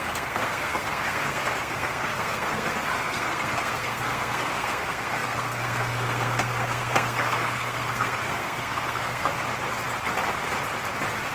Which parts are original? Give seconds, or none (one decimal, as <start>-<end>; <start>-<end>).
9.3-11.3

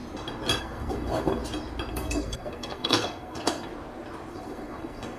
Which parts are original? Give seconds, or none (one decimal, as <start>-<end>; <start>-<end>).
0.0-0.6; 1.4-1.9; 3.7-4.3

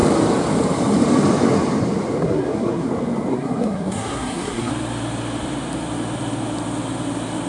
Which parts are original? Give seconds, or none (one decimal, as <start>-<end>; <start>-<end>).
0.0-2.2; 2.9-3.3; 4.7-7.5

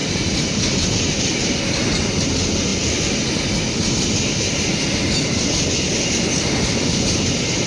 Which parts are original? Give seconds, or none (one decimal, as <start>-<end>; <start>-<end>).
0.0-7.7